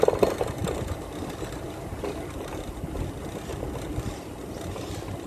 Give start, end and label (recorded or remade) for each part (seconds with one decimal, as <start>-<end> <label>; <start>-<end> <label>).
0.0-5.3 recorded